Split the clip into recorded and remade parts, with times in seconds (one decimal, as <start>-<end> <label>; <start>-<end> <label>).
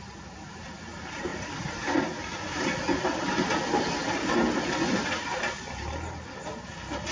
0.0-7.1 recorded